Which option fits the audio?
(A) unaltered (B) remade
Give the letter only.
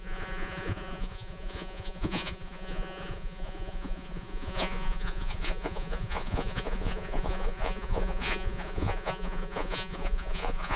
B